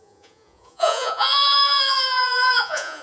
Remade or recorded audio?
remade